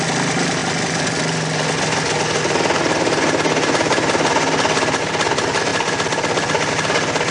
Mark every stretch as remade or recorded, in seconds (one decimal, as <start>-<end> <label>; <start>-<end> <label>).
0.0-7.3 recorded